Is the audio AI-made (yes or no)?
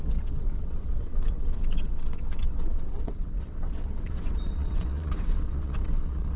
yes